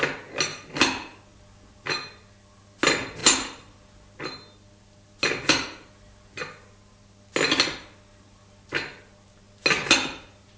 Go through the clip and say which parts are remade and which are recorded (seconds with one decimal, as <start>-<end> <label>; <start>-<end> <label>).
0.0-10.6 recorded